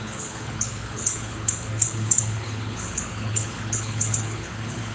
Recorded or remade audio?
remade